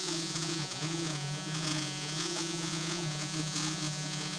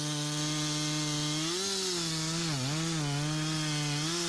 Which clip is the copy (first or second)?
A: first